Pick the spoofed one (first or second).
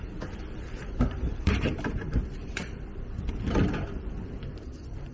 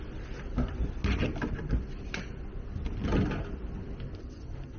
first